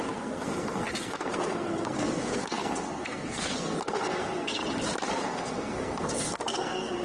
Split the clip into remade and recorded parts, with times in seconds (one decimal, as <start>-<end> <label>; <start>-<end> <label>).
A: 0.0-4.6 remade; 4.6-5.1 recorded; 5.1-7.0 remade